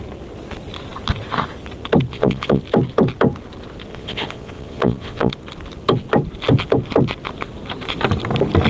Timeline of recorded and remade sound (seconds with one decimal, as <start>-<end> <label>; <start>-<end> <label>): 0.0-2.1 recorded; 2.1-2.6 remade; 2.6-3.9 recorded; 3.9-5.3 remade; 5.3-8.7 recorded